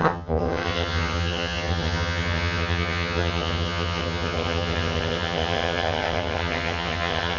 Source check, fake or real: fake